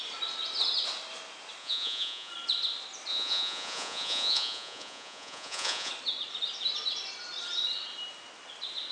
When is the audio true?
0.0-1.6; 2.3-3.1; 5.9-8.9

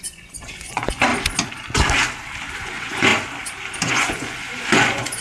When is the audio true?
1.1-2.6; 3.1-3.9

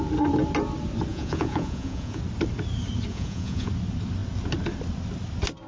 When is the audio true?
0.0-1.1; 2.2-3.1; 3.7-5.7

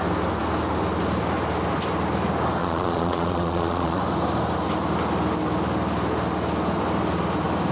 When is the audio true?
0.0-2.6; 4.0-7.7

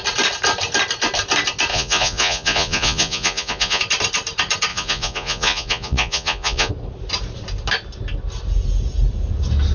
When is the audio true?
0.0-1.7; 3.8-4.7; 6.7-9.7

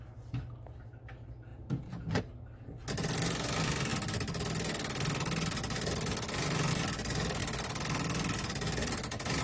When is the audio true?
0.0-1.5; 2.2-9.4

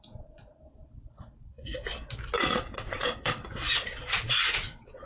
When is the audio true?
1.7-2.4